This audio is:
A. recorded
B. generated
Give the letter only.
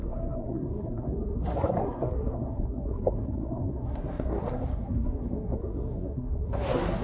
B